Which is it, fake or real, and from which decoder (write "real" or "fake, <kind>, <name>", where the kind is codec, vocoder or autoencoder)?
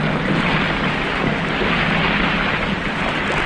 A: real